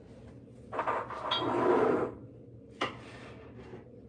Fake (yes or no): no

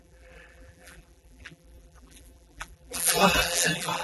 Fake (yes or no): yes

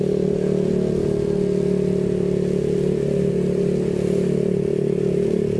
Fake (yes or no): no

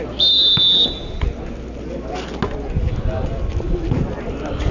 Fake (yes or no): no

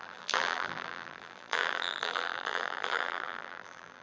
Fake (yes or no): yes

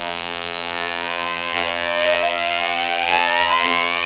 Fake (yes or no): yes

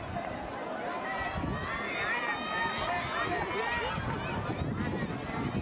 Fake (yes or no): no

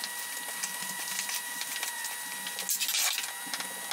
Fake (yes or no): no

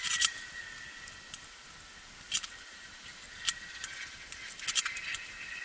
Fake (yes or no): no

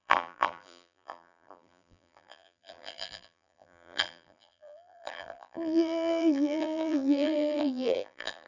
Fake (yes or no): yes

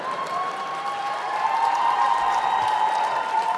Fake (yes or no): yes